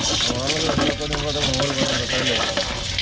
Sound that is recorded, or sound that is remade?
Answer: recorded